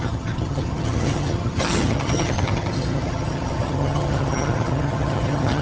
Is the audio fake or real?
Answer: fake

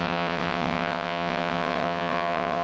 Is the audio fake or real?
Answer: fake